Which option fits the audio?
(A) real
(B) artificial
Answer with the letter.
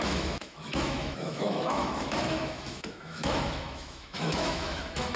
B